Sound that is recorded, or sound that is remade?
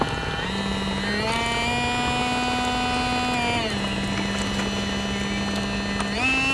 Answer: recorded